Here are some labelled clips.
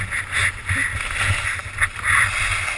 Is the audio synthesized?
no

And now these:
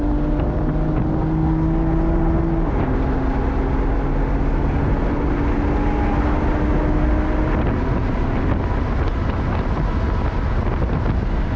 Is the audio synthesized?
no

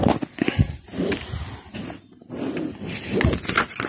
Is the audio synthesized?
no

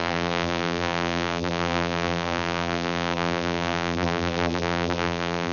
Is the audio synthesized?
yes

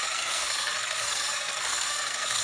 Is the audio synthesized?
yes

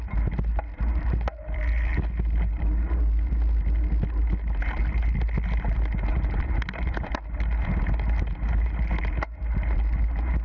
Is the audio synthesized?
no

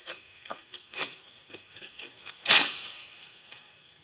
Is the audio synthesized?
yes